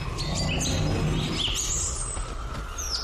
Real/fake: real